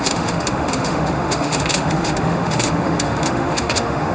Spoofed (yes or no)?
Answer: yes